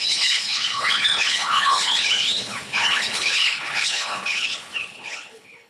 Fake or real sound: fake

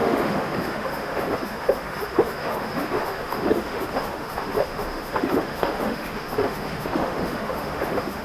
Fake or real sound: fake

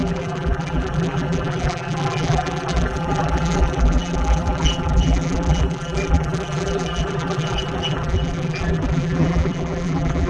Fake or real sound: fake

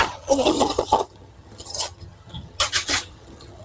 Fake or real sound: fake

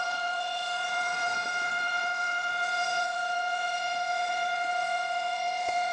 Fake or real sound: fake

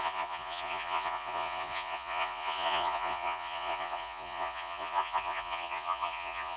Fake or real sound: fake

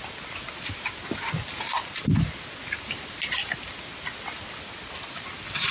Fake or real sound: real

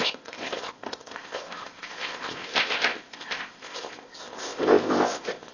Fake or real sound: fake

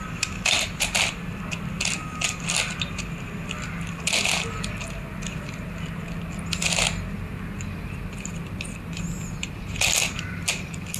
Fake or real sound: real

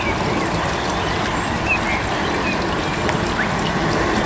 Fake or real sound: real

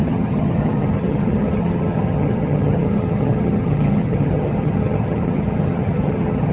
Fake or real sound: fake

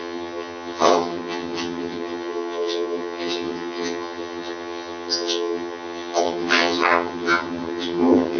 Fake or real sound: fake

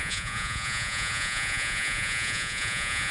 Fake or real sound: fake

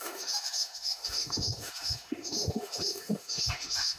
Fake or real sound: fake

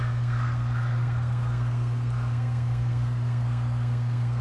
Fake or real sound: fake